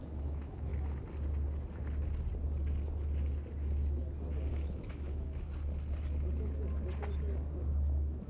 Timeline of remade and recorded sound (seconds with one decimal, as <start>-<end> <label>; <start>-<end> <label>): 0.0-0.7 remade; 0.7-4.5 recorded; 4.5-5.5 remade; 5.5-7.7 recorded; 7.7-8.3 remade